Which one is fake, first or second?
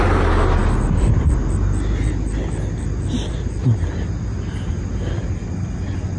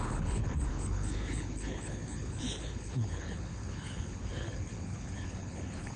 second